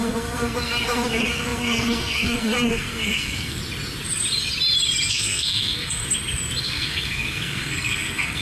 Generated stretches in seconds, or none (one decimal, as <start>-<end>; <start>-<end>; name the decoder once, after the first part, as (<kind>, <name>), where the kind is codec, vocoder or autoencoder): 0.0-3.6 (codec, SNAC); 5.1-6.0; 6.6-8.4